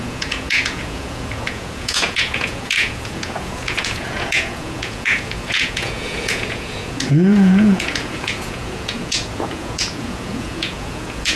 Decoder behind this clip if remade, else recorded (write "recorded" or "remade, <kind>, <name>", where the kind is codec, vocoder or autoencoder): remade, vocoder, Vocos